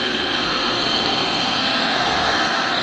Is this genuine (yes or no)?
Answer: no